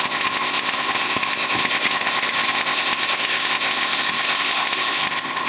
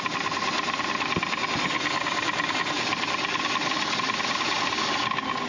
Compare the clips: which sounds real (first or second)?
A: second